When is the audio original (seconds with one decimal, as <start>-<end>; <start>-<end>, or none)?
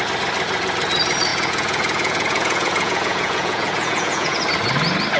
0.0-1.3; 4.4-5.2